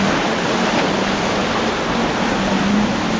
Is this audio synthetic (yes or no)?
no